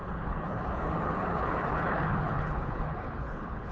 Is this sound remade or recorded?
remade